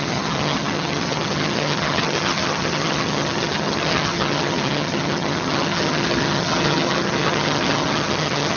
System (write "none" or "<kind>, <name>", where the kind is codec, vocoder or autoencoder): vocoder, HiFi-GAN